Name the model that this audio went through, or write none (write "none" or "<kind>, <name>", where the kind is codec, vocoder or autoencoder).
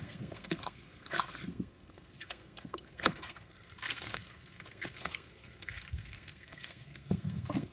codec, SNAC